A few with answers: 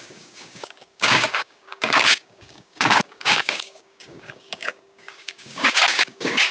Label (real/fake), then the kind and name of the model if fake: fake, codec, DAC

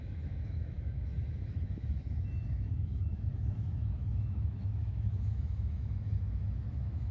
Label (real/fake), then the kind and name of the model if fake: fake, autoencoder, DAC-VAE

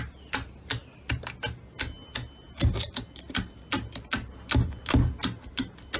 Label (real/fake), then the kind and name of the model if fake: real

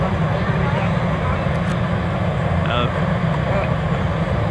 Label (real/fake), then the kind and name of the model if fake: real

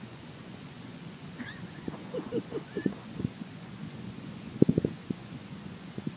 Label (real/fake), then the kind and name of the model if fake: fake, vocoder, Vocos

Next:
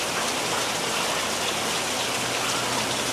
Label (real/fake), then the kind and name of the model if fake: real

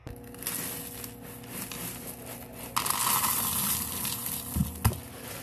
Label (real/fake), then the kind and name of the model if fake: real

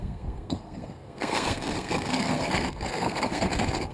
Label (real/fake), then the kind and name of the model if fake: fake, codec, SNAC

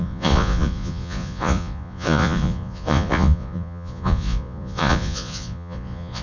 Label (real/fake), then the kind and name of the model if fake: fake, vocoder, Vocos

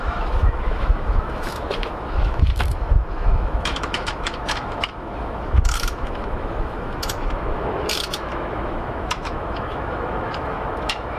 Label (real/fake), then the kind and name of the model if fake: fake, autoencoder, DAC-VAE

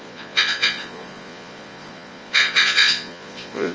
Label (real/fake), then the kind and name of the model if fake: fake, vocoder, Vocos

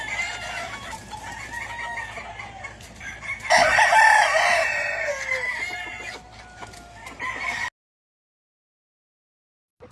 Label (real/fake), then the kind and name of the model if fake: real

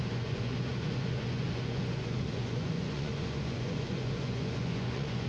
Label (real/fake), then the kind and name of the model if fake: fake, vocoder, Vocos